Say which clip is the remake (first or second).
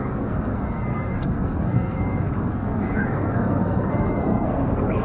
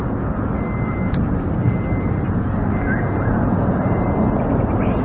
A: first